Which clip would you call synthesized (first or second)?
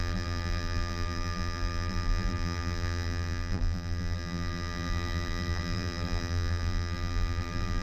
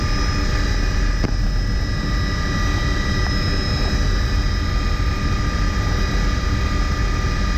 first